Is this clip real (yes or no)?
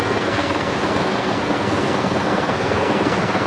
no